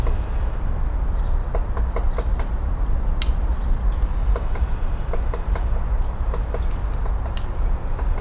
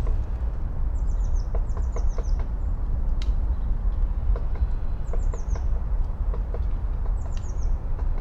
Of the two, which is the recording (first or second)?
first